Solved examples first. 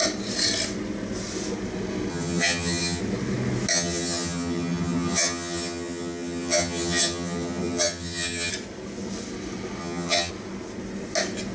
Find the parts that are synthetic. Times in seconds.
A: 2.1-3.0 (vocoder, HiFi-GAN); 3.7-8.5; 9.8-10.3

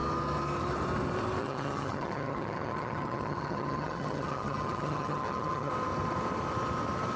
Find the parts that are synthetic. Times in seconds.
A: 1.4-5.7 (vocoder, HiFi-GAN)